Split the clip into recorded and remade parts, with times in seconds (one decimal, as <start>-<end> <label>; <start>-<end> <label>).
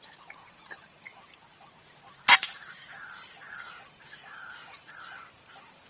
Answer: 0.0-1.1 recorded; 1.1-3.8 remade; 3.8-5.9 recorded